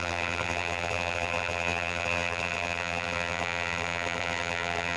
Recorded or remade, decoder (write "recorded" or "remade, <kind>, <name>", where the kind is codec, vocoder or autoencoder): remade, vocoder, BigVGAN v2